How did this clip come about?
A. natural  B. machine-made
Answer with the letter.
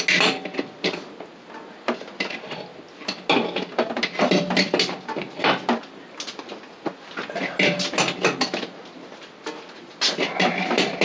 A